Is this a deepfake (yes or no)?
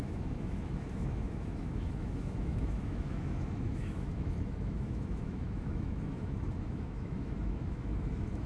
yes